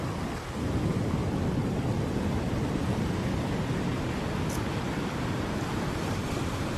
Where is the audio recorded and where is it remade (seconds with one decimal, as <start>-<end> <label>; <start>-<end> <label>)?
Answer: 0.0-6.8 recorded